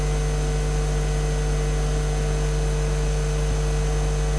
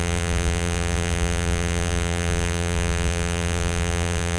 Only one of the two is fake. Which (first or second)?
second